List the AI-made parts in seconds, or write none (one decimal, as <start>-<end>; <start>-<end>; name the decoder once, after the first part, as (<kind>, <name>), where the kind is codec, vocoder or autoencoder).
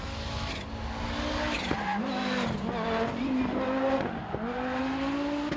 none